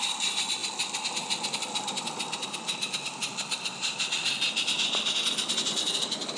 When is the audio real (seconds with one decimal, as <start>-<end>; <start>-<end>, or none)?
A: 0.0-6.4